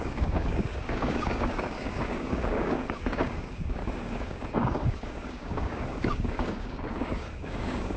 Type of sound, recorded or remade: remade